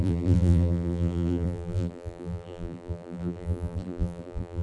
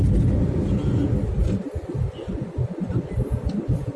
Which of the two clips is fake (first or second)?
first